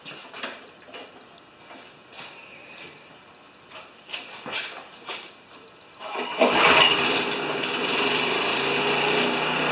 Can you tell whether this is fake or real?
real